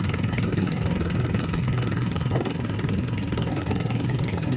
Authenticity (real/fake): fake